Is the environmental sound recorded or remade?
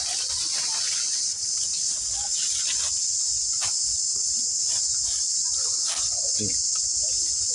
recorded